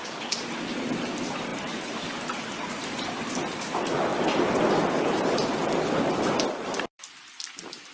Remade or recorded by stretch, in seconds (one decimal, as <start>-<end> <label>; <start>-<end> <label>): 0.0-7.9 remade